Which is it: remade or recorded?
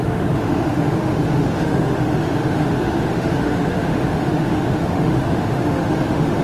remade